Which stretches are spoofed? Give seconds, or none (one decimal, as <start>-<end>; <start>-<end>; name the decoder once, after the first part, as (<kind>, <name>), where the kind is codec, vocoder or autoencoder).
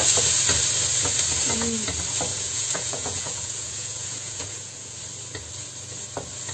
2.3-5.0 (vocoder, Vocos)